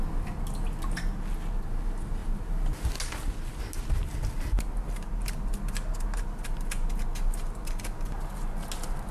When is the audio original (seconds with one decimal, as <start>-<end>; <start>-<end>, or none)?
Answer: 0.0-9.1